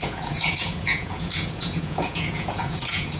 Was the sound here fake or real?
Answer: fake